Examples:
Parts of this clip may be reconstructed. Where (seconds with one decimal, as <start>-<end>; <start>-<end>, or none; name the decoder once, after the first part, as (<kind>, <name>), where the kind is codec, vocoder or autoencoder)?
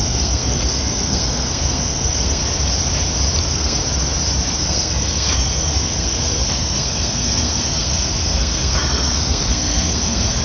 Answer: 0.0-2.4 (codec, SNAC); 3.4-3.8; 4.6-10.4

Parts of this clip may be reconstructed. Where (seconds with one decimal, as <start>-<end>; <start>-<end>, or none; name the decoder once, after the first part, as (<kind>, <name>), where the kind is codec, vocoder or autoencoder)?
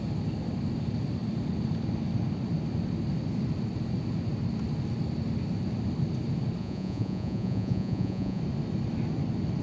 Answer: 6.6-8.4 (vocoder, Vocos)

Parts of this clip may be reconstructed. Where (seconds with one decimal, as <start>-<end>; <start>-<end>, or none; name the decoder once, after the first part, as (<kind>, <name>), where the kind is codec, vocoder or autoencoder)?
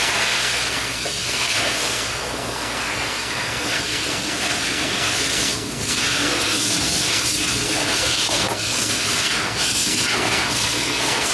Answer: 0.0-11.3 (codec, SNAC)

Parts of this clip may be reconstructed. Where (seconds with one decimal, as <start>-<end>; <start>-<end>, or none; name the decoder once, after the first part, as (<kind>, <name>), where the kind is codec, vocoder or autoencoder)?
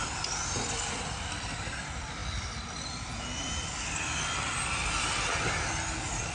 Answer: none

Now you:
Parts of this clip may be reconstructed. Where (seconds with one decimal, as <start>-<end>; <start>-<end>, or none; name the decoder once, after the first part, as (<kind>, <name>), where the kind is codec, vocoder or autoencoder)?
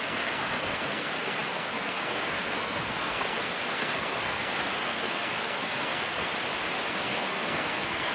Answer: 0.0-6.3 (codec, SNAC); 6.9-8.1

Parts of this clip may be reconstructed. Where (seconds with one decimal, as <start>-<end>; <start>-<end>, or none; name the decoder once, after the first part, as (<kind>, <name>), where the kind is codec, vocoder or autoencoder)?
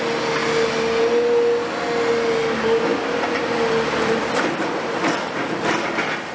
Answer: 2.9-5.7 (vocoder, BigVGAN v2)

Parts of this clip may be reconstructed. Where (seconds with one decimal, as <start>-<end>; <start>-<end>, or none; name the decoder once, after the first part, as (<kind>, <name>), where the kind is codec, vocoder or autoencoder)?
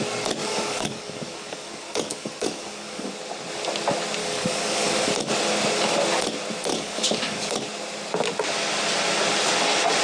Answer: 0.4-3.1 (codec, DAC); 4.2-5.1; 6.7-7.5